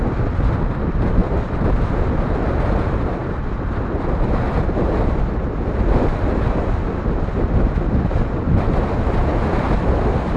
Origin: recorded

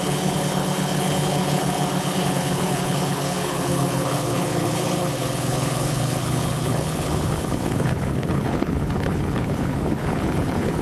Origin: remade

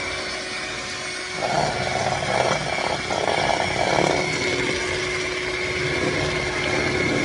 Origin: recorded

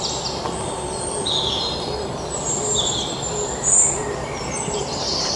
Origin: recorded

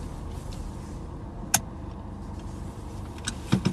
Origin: recorded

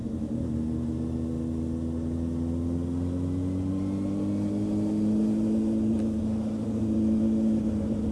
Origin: recorded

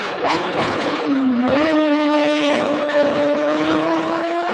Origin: remade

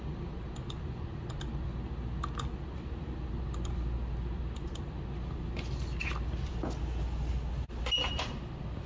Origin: recorded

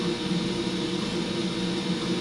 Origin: recorded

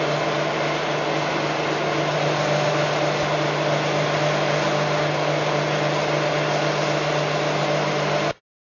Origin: recorded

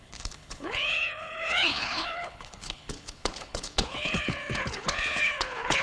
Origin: remade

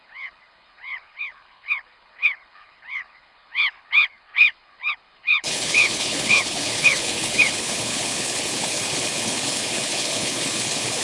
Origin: remade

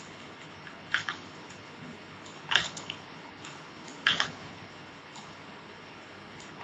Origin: remade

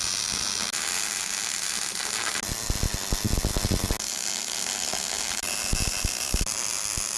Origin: recorded